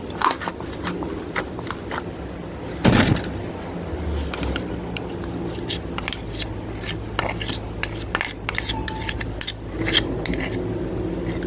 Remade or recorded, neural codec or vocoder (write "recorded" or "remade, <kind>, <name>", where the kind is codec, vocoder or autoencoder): recorded